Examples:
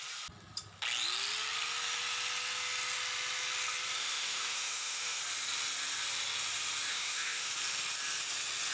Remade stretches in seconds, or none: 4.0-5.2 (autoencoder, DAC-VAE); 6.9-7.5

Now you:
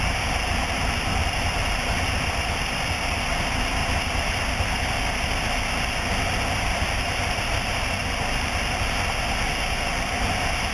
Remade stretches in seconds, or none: none

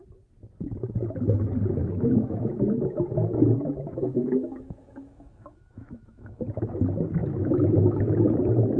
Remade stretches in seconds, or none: 1.8-6.6 (autoencoder, DAC-VAE); 7.2-8.4

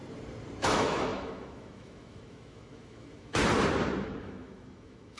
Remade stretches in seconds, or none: 0.6-3.4 (autoencoder, DAC-VAE); 4.2-5.2